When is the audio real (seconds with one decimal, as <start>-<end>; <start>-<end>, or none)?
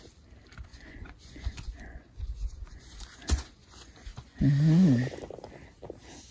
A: 0.0-0.7; 4.4-6.3